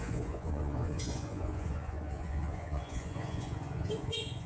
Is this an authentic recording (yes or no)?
no